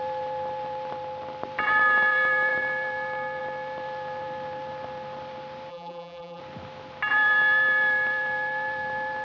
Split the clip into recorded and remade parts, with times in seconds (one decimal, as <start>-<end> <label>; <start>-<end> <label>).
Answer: 0.0-5.7 recorded; 5.7-6.4 remade; 6.4-9.2 recorded